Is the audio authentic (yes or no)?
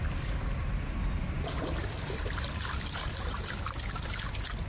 yes